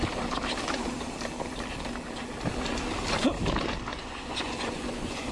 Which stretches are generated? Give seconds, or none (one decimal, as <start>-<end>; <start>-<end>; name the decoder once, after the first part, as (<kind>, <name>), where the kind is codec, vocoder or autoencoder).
3.9-5.3 (vocoder, Vocos)

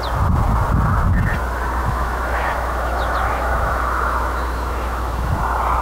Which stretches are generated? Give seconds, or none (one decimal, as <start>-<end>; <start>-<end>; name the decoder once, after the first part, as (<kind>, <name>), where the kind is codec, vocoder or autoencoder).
1.8-5.3 (autoencoder, DAC-VAE)

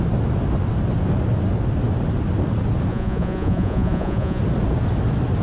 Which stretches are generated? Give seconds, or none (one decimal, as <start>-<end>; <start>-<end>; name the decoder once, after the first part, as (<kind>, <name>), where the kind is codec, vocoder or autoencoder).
2.9-4.4 (vocoder, Vocos)

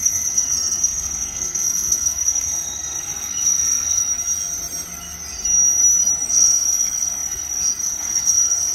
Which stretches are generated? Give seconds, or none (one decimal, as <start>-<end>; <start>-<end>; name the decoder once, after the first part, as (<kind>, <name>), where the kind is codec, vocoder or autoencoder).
0.0-4.0 (codec, SNAC); 6.3-8.7

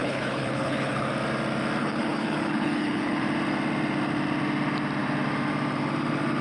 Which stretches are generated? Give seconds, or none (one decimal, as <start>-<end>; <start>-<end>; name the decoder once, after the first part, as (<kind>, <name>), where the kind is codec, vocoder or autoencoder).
0.0-1.1 (codec, HILCodec); 1.8-3.2

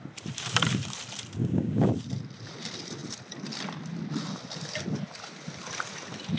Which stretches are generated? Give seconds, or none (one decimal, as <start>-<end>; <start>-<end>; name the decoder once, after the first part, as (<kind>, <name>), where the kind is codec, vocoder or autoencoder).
1.4-1.9 (codec, DAC)

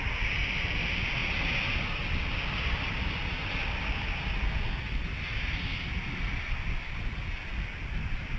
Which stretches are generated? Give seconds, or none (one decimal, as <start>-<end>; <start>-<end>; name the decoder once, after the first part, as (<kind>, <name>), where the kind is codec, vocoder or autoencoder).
none